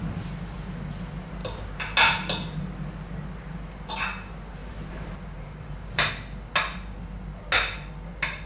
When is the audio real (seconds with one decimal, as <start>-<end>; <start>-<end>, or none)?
0.0-4.6; 6.1-8.5